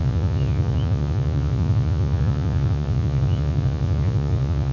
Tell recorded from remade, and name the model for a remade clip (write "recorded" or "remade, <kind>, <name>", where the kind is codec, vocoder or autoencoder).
remade, vocoder, Vocos